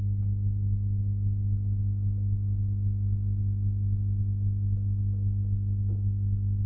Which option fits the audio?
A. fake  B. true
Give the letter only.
B